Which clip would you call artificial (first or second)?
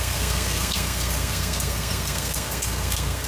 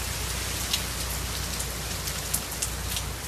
first